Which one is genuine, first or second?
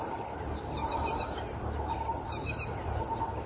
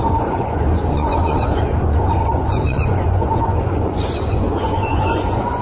first